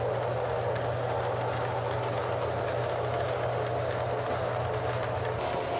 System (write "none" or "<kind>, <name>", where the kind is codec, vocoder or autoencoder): none